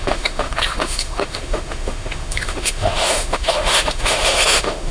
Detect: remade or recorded remade